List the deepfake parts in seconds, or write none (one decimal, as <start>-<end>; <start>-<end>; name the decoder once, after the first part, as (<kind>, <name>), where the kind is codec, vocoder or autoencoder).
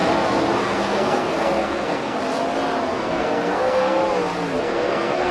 0.6-2.2 (codec, SNAC); 2.9-4.0; 4.6-5.3